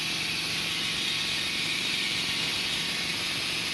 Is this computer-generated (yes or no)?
no